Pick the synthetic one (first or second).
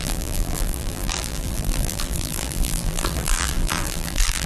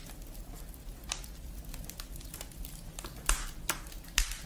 first